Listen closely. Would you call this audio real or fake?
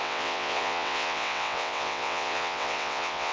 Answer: fake